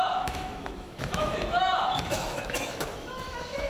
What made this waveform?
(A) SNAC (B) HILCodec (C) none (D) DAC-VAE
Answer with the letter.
D